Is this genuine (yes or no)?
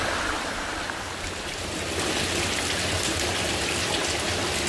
yes